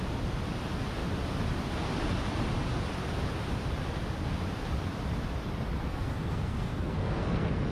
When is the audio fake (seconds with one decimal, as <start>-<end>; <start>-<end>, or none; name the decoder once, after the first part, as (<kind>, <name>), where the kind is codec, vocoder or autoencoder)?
5.9-7.7 (codec, SNAC)